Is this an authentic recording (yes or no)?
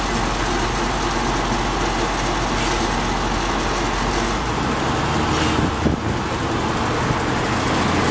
yes